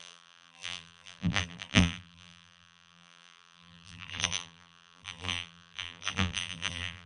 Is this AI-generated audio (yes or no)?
yes